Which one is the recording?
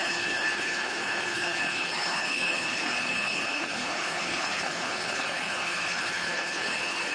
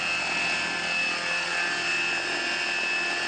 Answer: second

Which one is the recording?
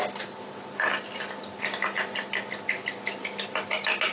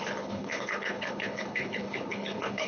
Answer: first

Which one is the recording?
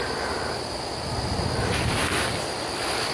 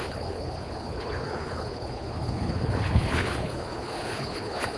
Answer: first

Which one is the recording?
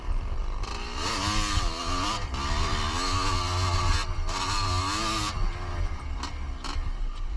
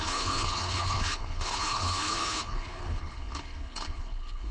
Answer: first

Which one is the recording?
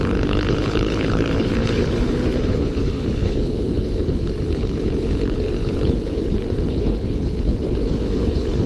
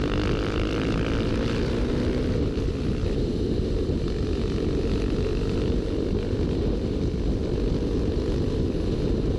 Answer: second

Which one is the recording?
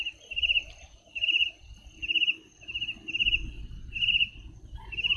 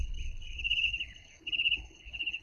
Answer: first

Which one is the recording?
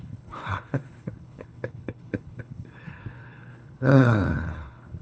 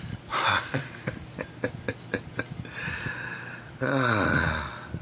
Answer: second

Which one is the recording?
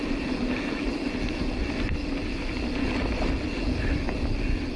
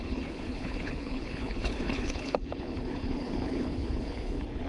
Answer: first